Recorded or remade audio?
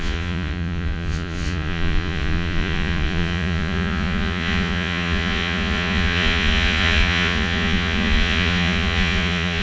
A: remade